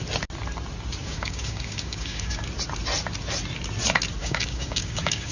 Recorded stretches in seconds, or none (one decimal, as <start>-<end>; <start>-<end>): 0.0-1.0; 2.4-4.2